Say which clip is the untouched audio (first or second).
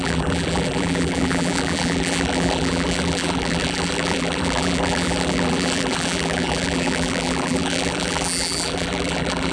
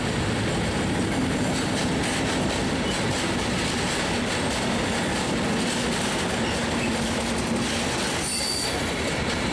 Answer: second